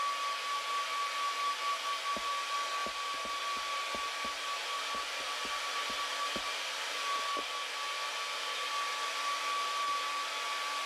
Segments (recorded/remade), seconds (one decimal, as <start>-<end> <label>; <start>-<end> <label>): 0.0-10.9 recorded